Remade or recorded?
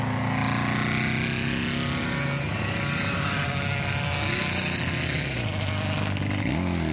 recorded